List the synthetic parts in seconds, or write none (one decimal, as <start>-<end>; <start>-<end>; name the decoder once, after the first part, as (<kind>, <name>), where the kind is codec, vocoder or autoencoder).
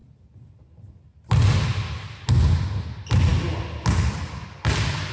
none